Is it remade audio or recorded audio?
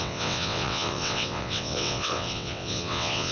remade